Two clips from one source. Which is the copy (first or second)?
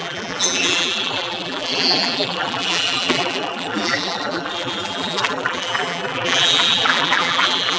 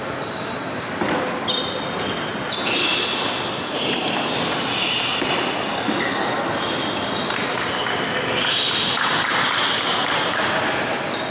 first